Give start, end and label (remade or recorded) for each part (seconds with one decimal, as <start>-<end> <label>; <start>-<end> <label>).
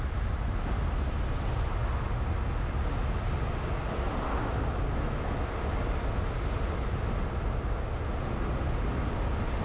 0.0-9.6 recorded